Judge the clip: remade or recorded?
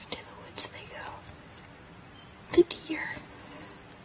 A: remade